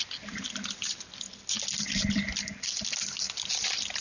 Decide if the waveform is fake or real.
real